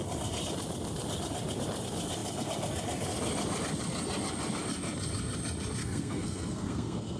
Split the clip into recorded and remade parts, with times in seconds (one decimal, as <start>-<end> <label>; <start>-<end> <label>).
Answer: 0.0-5.8 recorded; 5.8-7.2 remade